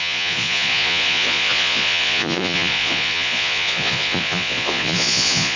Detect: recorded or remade remade